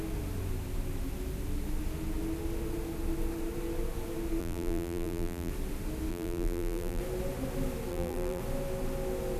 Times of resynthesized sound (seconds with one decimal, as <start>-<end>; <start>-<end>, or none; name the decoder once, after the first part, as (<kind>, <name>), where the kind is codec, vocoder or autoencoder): 4.4-5.5 (vocoder, BigVGAN v2); 6.1-7.0; 7.9-8.4